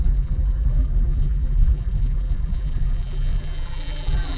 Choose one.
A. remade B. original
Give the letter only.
A